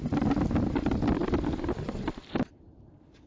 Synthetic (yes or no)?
no